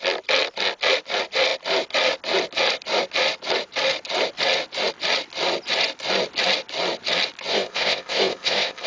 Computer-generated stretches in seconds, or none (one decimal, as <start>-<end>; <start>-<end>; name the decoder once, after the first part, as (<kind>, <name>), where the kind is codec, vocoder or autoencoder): 7.5-8.9 (codec, ZipCodec)